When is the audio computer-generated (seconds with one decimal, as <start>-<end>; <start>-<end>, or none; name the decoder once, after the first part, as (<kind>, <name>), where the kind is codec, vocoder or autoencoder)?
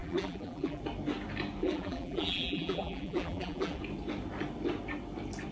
0.0-0.8 (vocoder, BigVGAN v2); 1.6-3.8